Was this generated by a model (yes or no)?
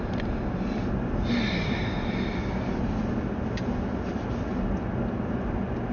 no